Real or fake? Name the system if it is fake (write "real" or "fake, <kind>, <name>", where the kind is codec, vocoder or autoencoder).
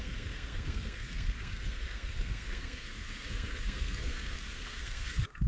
fake, codec, SNAC